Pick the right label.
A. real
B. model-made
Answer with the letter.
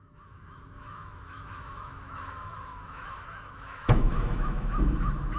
B